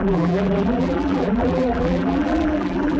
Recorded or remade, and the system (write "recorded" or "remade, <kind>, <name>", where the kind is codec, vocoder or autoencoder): remade, vocoder, BigVGAN v2